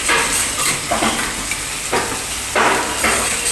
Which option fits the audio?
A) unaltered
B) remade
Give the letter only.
A